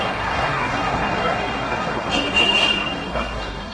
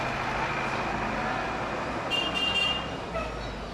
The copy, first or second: first